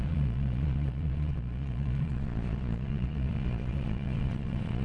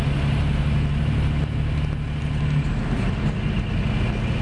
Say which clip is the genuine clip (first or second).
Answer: second